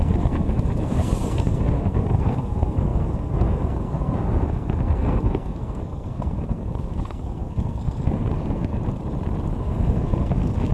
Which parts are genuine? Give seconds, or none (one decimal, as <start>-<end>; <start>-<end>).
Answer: 8.8-9.6